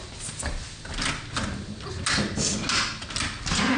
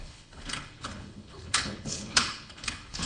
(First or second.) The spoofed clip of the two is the second